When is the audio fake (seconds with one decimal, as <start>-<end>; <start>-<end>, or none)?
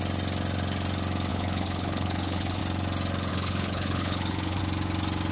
1.3-2.6; 3.3-4.6